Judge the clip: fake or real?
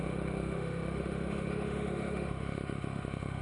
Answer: fake